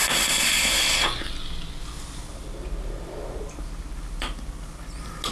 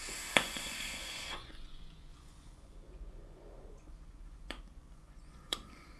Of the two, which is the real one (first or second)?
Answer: first